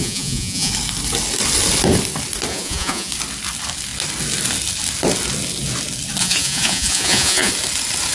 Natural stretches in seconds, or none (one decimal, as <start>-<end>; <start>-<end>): 0.7-2.5; 3.1-6.2; 7.5-8.1